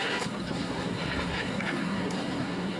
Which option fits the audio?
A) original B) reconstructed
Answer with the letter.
B